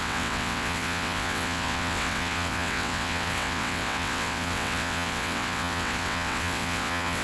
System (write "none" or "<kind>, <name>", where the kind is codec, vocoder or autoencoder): vocoder, WaveNeXt